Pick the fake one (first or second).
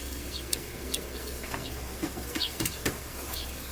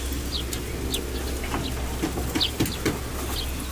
first